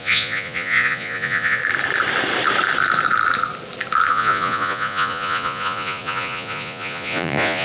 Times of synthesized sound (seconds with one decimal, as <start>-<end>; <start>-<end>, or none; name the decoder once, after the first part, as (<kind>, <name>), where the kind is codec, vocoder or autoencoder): 0.0-1.6 (vocoder, Vocos); 4.1-7.6